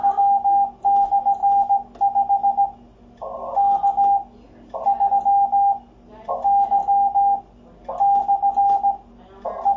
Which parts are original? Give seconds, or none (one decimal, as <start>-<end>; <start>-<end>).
0.0-9.8